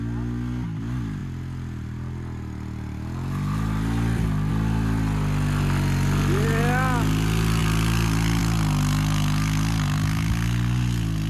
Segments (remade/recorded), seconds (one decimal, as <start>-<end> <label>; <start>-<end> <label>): 0.0-11.3 recorded